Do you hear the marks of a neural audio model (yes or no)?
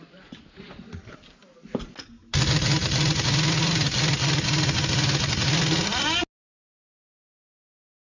no